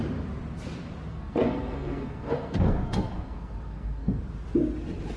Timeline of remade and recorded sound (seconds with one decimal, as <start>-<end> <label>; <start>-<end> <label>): 0.0-1.1 recorded; 1.1-4.2 remade; 4.2-5.2 recorded

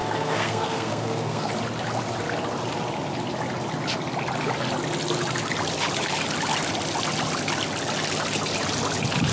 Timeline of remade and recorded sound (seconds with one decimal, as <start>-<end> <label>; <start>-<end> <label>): 0.0-1.5 remade; 1.5-9.3 recorded

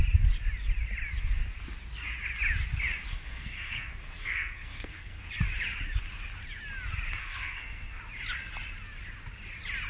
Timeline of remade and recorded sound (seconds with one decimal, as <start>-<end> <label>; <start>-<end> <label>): 0.0-3.1 recorded; 3.1-5.3 remade; 5.3-7.2 recorded; 7.2-8.0 remade; 8.0-9.9 recorded